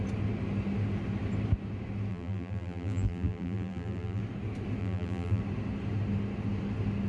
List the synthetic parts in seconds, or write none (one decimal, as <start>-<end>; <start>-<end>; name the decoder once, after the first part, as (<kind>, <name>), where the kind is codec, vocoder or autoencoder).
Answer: 2.1-4.2 (vocoder, BigVGAN v2); 4.8-5.4

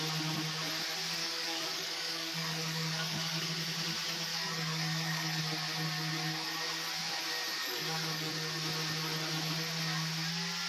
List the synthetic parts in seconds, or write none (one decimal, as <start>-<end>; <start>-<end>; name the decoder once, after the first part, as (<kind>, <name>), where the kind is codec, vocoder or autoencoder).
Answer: 1.2-3.5 (codec, DAC); 4.3-5.4; 7.6-8.3